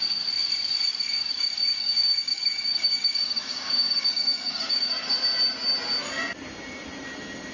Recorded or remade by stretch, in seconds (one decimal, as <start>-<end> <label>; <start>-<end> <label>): 0.0-0.9 recorded; 0.9-4.9 remade; 4.9-7.5 recorded